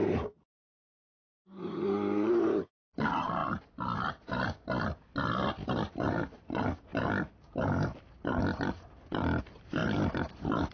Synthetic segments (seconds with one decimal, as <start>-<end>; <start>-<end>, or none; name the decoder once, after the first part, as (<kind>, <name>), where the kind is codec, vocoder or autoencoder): 0.0-3.4 (vocoder, BigVGAN v2); 5.9-6.9; 9.4-9.8